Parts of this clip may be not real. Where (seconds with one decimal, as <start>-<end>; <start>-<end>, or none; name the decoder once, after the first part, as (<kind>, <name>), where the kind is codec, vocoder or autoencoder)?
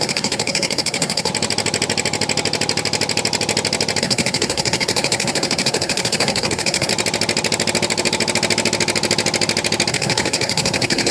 0.0-1.3 (codec, SNAC); 4.0-6.9; 9.9-11.1